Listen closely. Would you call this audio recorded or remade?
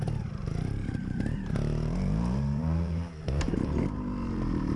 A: remade